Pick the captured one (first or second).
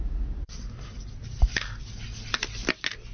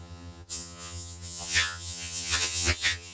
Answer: first